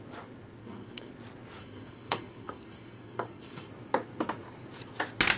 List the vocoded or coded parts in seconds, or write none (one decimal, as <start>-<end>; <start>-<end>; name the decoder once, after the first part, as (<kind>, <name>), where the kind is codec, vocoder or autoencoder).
0.6-1.1 (codec, SNAC); 1.6-3.7